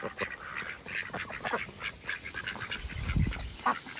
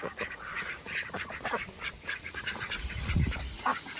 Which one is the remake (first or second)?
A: second